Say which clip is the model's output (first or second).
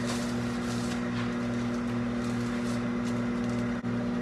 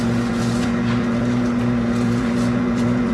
second